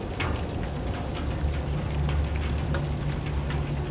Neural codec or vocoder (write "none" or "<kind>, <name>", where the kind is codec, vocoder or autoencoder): none